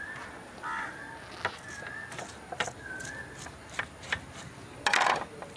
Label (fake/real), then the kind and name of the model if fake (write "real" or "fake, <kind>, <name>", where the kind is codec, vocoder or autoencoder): real